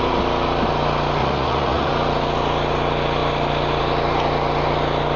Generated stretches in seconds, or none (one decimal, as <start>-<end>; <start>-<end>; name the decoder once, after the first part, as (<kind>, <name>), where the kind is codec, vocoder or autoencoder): 1.2-1.9 (vocoder, Vocos)